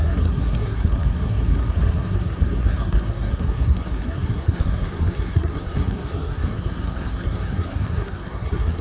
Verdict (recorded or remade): remade